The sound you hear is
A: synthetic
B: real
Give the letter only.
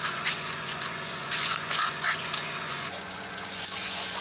A